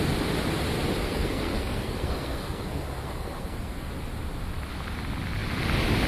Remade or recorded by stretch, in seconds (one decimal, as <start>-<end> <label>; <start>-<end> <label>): 0.0-1.0 recorded; 1.0-3.9 remade; 3.9-6.1 recorded